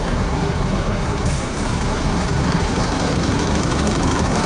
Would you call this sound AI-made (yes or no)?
yes